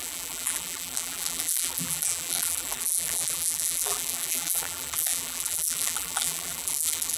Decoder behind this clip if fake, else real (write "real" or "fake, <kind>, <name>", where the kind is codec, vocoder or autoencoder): fake, vocoder, BigVGAN v2